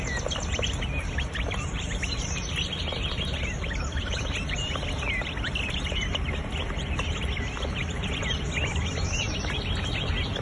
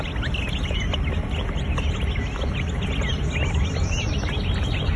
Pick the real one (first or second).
second